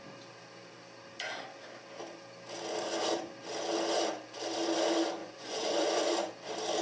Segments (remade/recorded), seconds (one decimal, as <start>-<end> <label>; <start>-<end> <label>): 0.0-5.2 recorded; 5.2-6.3 remade; 6.3-6.8 recorded